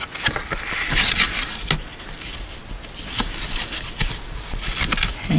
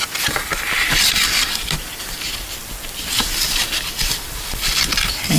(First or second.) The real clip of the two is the first